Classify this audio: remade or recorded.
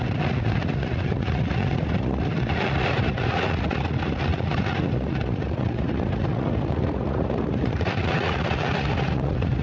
remade